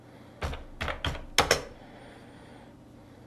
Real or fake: real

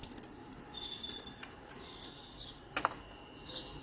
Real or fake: real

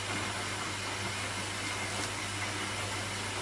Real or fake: real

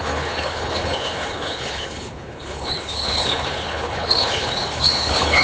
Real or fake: fake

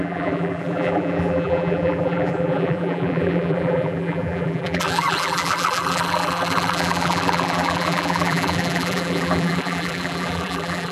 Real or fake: fake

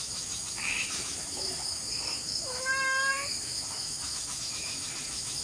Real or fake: fake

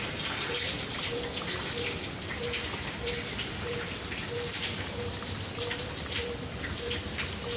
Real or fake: real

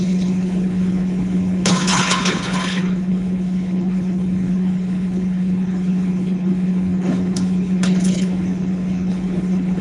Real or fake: fake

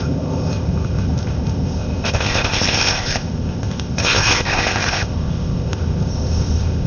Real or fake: fake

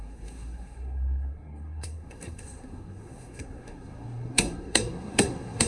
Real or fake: fake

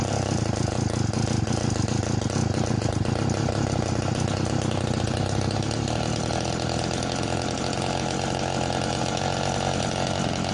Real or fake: real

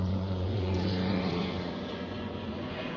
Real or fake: fake